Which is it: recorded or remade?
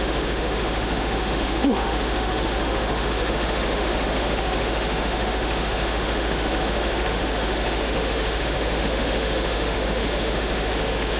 remade